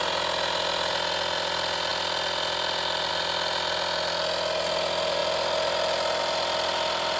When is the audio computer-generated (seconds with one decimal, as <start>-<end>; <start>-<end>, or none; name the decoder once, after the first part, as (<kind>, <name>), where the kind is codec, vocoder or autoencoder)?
none